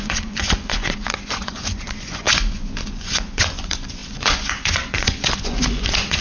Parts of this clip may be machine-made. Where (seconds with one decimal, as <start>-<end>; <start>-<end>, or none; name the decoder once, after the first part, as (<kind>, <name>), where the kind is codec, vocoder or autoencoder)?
0.0-6.2 (vocoder, Vocos)